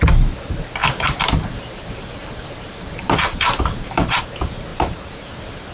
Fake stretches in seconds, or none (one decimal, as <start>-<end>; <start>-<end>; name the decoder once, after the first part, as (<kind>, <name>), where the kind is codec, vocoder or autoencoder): 0.8-4.2 (vocoder, BigVGAN v2); 4.7-5.3